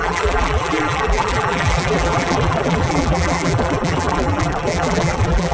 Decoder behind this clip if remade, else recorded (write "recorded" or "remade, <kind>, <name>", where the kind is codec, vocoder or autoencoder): remade, vocoder, BigVGAN v2